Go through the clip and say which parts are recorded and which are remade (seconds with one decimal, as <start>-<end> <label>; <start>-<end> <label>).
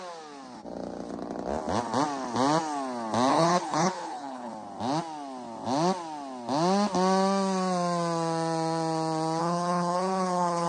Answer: 0.0-3.3 recorded; 3.3-4.5 remade; 4.5-9.4 recorded; 9.4-10.7 remade